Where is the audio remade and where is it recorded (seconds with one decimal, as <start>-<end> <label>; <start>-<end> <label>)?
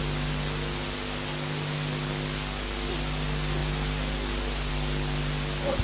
0.0-5.8 recorded